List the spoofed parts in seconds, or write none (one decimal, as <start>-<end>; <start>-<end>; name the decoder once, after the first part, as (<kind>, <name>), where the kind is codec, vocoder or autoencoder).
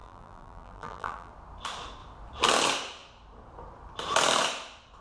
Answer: 0.0-1.3 (vocoder, BigVGAN v2)